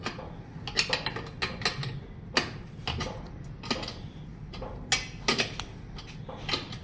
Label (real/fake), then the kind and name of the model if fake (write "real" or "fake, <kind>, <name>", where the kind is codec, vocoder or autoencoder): real